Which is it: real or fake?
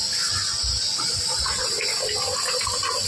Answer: real